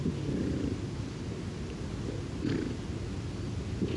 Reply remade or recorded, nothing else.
recorded